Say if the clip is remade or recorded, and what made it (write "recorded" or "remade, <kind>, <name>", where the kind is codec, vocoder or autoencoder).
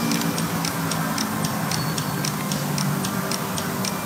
recorded